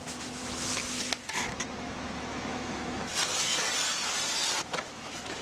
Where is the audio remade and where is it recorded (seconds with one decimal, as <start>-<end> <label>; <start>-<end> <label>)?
0.0-3.0 remade; 3.0-4.6 recorded; 4.6-5.4 remade